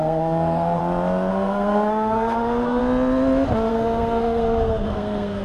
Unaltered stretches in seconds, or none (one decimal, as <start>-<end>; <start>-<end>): 0.8-1.3; 2.8-3.7